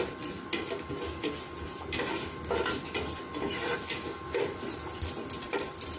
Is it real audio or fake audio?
real